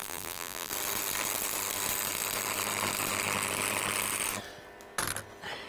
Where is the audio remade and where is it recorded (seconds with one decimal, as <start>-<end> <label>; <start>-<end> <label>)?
0.0-0.7 remade; 0.7-5.7 recorded